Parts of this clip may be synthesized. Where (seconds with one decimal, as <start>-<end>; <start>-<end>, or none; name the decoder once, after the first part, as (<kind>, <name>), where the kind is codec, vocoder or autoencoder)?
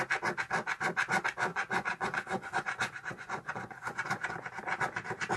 1.5-4.3 (vocoder, Vocos)